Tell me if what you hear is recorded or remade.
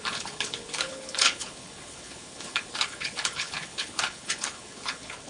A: remade